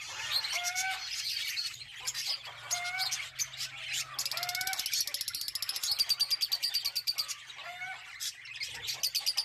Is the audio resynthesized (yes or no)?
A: no